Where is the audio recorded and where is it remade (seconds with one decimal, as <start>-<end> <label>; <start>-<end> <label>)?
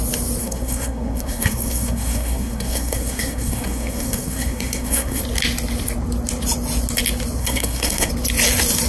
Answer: 0.0-0.4 recorded; 0.4-5.2 remade; 5.2-7.4 recorded; 7.4-8.1 remade; 8.1-8.9 recorded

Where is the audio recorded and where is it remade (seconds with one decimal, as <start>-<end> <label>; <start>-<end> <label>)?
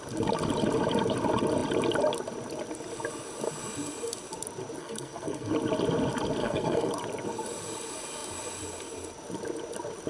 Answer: 0.0-4.8 recorded; 4.8-5.5 remade; 5.5-6.4 recorded; 6.4-6.9 remade; 6.9-10.1 recorded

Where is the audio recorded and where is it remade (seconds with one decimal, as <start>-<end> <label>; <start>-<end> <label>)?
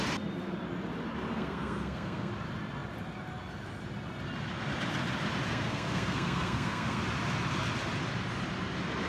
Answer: 0.0-1.3 recorded; 1.3-2.3 remade; 2.3-5.5 recorded; 5.5-7.0 remade; 7.0-9.1 recorded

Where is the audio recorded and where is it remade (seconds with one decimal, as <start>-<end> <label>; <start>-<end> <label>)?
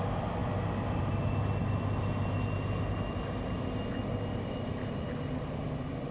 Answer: 0.0-6.1 recorded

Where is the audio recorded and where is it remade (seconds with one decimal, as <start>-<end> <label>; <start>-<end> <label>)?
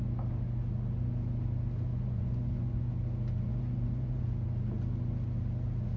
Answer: 0.0-1.9 recorded; 1.9-2.9 remade; 2.9-3.5 recorded; 3.5-4.2 remade; 4.2-6.0 recorded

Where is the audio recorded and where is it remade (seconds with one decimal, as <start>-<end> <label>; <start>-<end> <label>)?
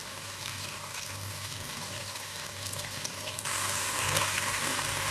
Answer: 0.0-5.1 remade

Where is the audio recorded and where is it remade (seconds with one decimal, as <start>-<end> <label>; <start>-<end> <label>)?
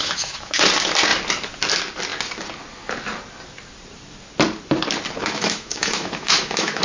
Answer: 0.0-0.6 remade; 0.6-5.2 recorded; 5.2-6.8 remade